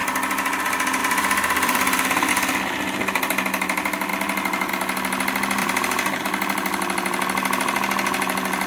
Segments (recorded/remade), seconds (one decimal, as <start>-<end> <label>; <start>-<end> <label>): 0.0-1.0 recorded; 1.0-2.3 remade; 2.3-5.6 recorded; 5.6-6.2 remade; 6.2-8.7 recorded